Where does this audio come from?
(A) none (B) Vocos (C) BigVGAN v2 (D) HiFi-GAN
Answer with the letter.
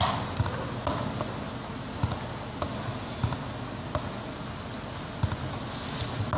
A